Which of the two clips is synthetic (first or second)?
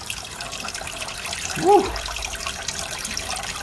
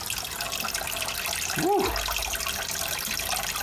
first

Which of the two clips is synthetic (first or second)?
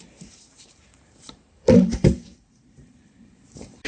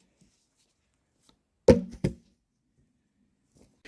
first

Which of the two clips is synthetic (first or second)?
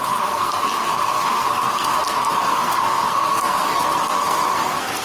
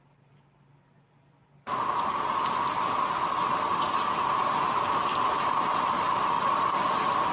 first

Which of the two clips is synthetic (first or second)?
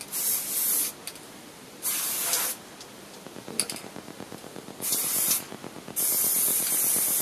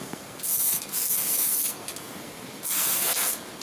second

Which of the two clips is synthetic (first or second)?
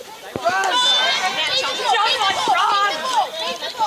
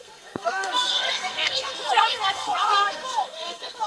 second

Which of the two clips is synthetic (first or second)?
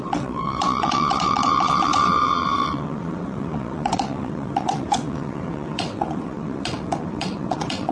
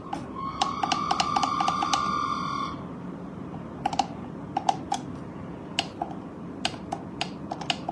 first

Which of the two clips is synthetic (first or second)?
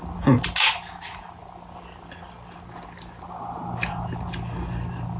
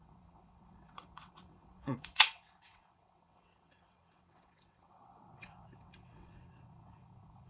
second